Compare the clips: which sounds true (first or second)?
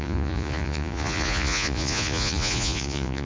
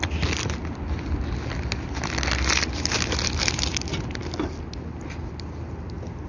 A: second